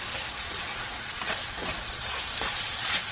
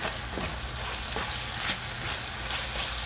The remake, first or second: first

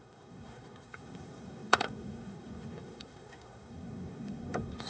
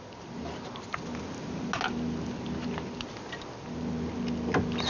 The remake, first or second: first